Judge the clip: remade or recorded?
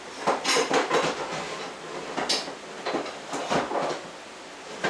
recorded